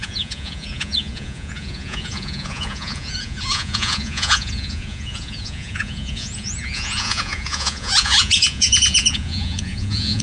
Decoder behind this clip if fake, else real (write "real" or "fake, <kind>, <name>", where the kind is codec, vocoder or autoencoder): fake, vocoder, Vocos